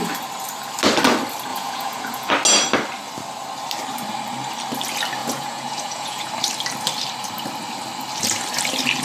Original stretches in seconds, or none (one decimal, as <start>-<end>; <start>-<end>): 0.0-1.5; 2.3-5.2; 6.3-9.0